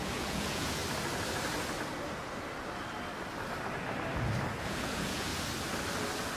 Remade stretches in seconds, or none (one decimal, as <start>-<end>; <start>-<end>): 0.0-0.8; 4.6-5.3